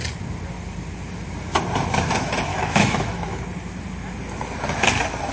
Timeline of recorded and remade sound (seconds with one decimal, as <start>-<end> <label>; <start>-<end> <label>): 0.0-2.5 recorded; 2.5-3.4 remade; 3.4-5.3 recorded